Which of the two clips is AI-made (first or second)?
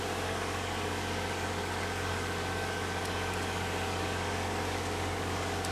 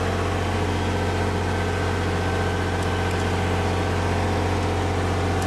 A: first